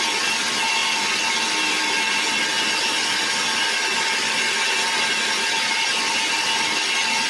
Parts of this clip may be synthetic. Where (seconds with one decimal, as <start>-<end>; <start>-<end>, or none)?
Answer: none